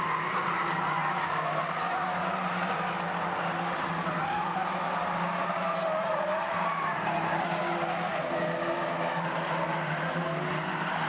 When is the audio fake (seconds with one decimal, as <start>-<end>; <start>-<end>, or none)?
none